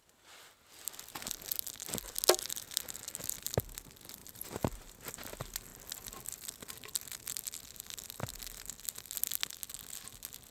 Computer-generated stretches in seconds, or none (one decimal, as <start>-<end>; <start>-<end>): 4.2-4.9